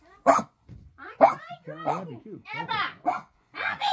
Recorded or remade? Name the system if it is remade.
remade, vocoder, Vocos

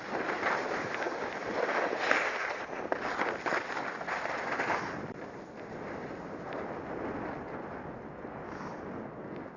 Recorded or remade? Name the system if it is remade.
recorded